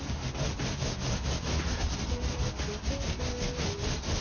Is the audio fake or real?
real